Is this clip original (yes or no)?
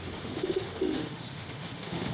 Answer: no